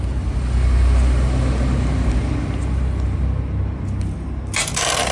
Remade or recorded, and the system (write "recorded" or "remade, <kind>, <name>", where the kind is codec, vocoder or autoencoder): recorded